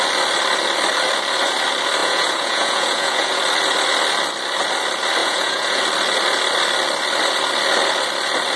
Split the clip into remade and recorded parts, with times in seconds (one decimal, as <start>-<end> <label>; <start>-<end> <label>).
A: 0.0-2.0 recorded; 2.0-3.4 remade; 3.4-5.2 recorded; 5.2-5.8 remade; 5.8-8.6 recorded